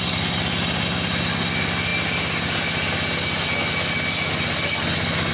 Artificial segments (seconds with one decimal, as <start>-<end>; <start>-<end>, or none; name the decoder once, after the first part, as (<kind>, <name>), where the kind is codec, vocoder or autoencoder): none